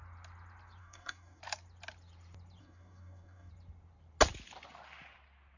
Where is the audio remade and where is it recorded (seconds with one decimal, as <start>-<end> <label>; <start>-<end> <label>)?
0.0-0.8 recorded; 0.8-1.4 remade; 1.4-2.6 recorded; 2.6-3.5 remade; 3.5-5.6 recorded

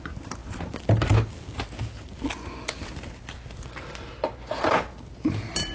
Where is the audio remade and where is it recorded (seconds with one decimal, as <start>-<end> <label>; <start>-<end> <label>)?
0.0-5.7 recorded